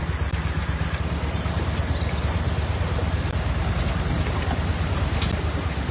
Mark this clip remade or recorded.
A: recorded